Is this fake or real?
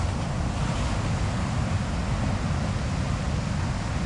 real